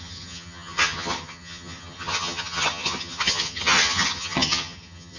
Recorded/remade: remade